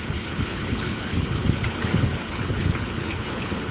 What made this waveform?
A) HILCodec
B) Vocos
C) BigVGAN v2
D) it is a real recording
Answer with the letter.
A